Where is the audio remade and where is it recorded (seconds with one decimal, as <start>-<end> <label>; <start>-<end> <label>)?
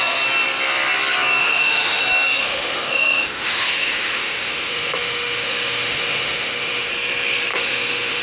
0.0-1.4 recorded; 1.4-2.0 remade; 2.0-2.4 recorded; 2.4-6.9 remade; 6.9-7.5 recorded; 7.5-8.2 remade